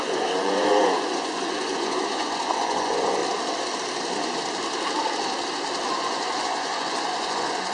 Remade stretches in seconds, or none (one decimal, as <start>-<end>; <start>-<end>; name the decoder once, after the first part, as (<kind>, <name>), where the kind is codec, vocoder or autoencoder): 0.0-3.2 (vocoder, Vocos); 5.9-7.7

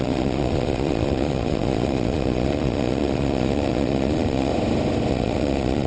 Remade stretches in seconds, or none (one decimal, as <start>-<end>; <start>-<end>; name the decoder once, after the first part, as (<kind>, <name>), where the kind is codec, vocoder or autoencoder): 0.0-4.5 (vocoder, Vocos); 5.1-5.9

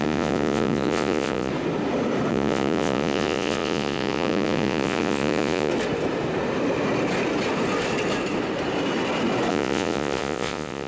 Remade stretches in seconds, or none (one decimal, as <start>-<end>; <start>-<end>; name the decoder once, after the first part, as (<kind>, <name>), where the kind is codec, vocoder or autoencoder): 0.0-1.5 (vocoder, Vocos); 2.3-5.7; 9.5-10.9

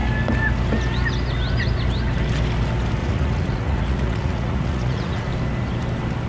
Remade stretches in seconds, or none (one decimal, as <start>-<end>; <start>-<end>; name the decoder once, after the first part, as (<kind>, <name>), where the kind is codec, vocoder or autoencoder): 3.0-5.3 (vocoder, Vocos)

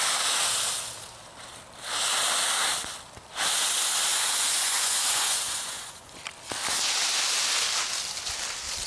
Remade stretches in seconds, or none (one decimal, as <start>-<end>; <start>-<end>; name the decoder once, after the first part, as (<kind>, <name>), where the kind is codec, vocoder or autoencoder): 4.1-6.2 (vocoder, Vocos)